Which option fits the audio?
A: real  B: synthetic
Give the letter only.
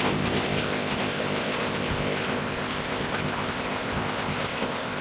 B